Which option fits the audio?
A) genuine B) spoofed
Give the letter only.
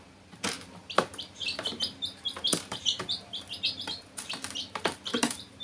B